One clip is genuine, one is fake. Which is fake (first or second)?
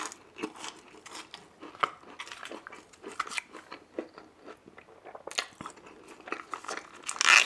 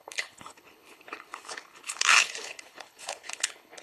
second